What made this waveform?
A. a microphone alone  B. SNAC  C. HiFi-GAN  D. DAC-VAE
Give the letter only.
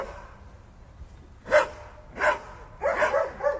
A